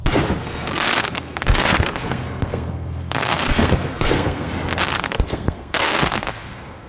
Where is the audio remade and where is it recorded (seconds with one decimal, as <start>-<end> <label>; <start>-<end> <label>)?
0.0-0.4 recorded; 0.4-4.5 remade; 4.5-4.9 recorded; 4.9-6.9 remade